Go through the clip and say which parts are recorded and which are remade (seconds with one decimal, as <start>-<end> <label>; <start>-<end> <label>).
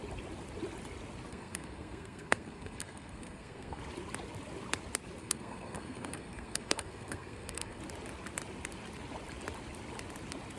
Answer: 0.0-1.3 recorded; 1.3-3.8 remade; 3.8-5.2 recorded; 5.2-7.8 remade; 7.8-10.6 recorded